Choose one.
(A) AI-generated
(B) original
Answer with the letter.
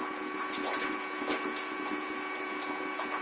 A